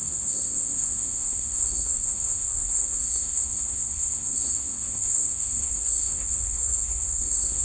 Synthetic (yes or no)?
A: yes